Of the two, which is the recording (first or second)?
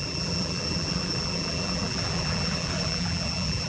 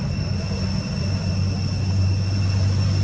second